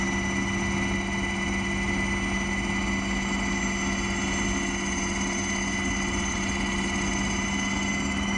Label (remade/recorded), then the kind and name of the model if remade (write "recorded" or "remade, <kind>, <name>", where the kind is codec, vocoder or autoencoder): recorded